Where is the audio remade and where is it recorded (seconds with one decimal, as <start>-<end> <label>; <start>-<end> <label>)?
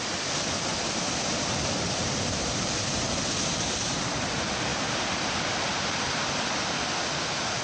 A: 0.0-0.7 recorded; 0.7-4.2 remade; 4.2-4.7 recorded; 4.7-5.3 remade; 5.3-5.7 recorded; 5.7-6.5 remade; 6.5-7.6 recorded